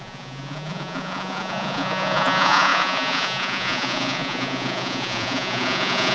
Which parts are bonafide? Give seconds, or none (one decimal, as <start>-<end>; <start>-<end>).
none